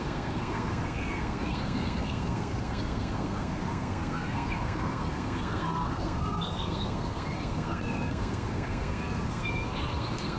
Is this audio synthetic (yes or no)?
yes